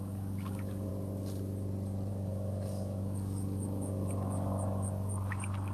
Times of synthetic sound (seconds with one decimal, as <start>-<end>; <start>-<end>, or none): 0.0-0.9; 2.1-5.7